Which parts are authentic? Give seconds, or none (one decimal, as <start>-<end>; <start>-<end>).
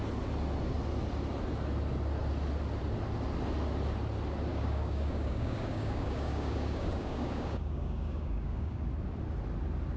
0.0-4.5; 8.9-10.0